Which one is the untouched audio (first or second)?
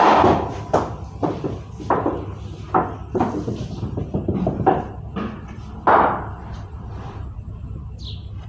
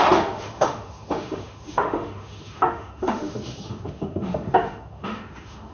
first